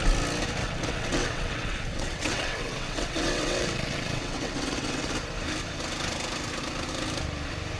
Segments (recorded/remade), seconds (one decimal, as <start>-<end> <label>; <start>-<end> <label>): 0.0-0.6 recorded; 0.6-5.1 remade; 5.1-7.8 recorded